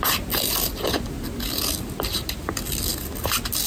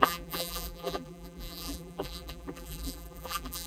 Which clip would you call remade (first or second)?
second